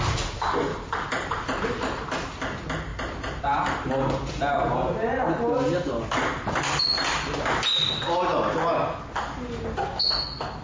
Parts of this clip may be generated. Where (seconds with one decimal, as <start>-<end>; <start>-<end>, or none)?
0.7-2.0; 2.9-3.4